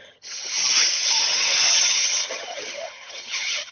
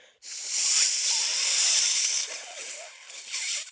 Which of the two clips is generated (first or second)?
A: first